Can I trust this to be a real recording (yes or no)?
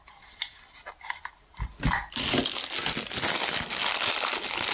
yes